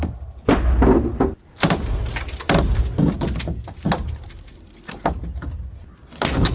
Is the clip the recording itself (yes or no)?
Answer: yes